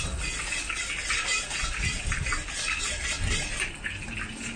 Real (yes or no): yes